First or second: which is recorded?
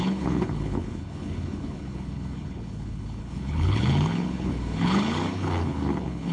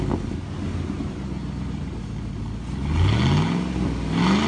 second